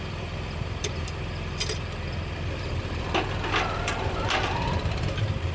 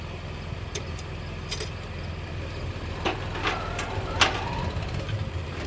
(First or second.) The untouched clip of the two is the second